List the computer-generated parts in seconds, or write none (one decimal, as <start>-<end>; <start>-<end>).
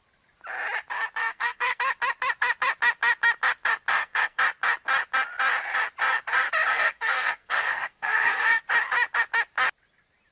1.2-1.8; 3.9-4.4; 6.7-8.6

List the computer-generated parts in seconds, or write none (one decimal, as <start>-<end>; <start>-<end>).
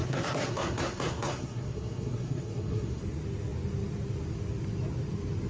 0.0-3.0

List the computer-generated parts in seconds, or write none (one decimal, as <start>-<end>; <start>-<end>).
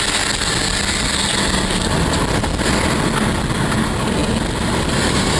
none